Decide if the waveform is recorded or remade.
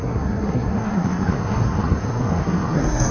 remade